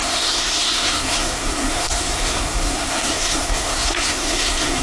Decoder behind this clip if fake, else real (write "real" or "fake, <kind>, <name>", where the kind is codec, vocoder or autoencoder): fake, codec, SNAC